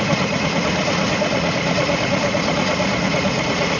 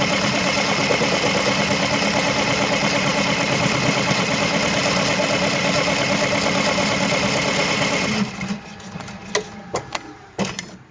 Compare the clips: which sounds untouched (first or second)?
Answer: second